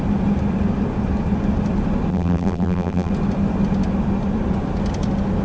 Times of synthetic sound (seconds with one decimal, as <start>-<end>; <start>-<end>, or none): 2.1-3.1